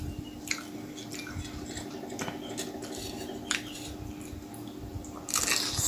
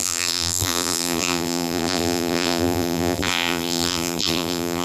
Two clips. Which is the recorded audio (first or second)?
first